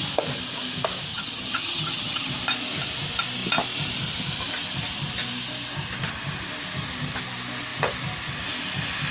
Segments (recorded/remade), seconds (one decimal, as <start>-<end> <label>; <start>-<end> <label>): 0.0-1.1 recorded; 1.1-2.3 remade; 2.3-9.1 recorded